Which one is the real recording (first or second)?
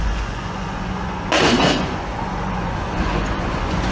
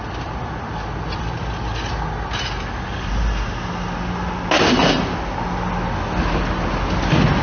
second